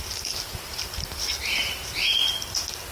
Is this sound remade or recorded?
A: recorded